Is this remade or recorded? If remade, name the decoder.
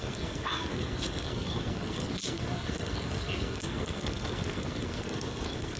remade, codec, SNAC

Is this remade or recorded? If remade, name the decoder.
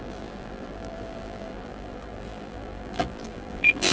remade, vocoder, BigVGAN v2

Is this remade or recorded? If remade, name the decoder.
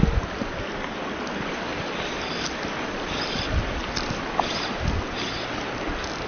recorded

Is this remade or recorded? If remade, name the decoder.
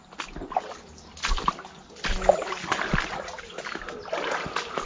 recorded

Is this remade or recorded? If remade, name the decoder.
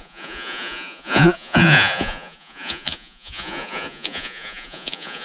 remade, vocoder, Vocos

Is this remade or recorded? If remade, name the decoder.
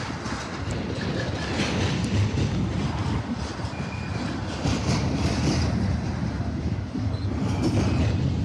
recorded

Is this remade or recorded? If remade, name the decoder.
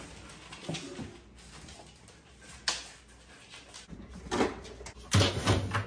recorded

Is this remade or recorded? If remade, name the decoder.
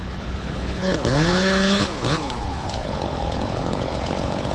remade, codec, HILCodec